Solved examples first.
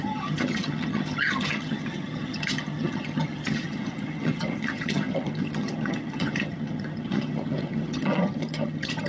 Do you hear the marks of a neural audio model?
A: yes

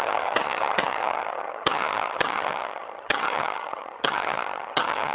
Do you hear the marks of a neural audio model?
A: yes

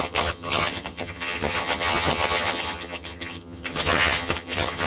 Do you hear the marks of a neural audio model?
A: yes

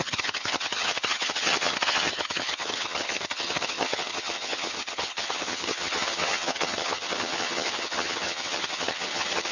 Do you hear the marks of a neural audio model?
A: yes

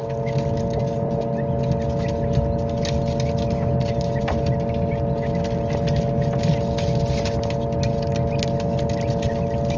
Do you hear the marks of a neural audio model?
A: no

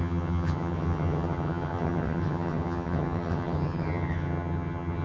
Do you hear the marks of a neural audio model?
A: yes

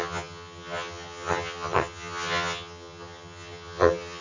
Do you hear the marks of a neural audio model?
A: yes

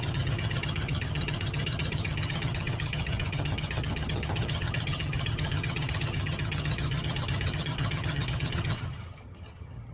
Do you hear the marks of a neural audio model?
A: yes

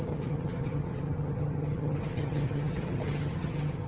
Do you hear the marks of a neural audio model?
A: yes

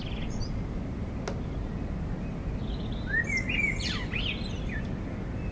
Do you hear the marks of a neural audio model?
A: no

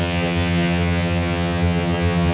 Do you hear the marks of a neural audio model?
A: yes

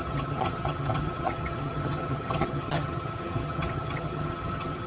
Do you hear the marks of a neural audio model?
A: yes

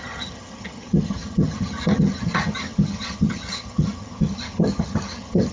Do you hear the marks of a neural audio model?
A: yes